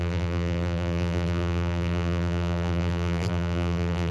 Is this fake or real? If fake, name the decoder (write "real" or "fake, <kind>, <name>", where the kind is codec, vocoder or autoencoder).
fake, vocoder, BigVGAN v2